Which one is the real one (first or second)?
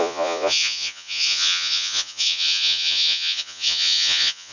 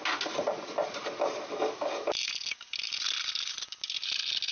second